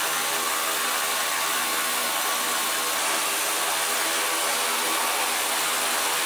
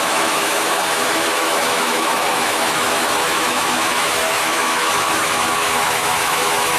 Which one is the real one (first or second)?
first